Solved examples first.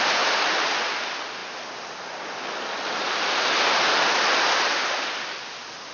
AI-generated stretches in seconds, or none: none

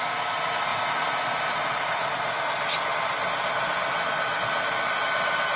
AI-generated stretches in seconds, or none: 0.7-1.4

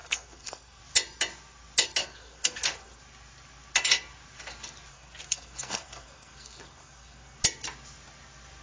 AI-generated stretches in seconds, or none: 0.0-0.8; 2.0-3.0; 4.9-7.4

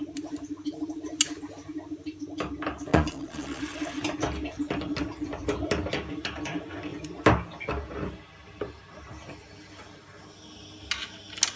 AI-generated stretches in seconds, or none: 2.9-3.6

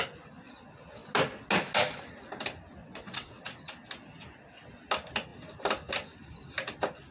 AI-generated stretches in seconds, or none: 2.8-3.4

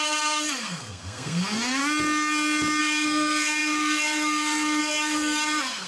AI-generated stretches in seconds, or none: 0.0-1.8; 2.8-5.9

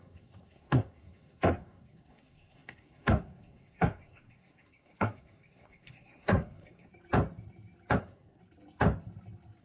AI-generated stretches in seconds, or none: 0.0-6.9; 8.0-8.4